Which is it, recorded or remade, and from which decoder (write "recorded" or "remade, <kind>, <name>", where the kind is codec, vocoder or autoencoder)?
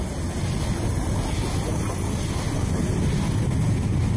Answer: recorded